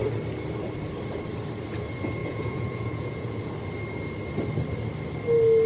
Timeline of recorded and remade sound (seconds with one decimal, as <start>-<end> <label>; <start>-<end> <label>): 0.0-2.2 recorded; 2.2-3.5 remade; 3.5-5.7 recorded